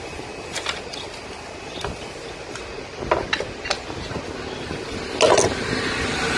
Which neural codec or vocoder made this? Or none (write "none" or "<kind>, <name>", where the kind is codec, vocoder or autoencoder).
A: none